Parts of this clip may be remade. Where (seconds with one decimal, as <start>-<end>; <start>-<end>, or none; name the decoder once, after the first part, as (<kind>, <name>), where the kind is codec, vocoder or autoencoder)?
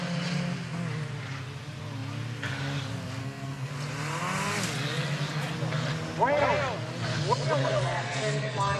3.2-3.7 (codec, SNAC); 7.6-8.8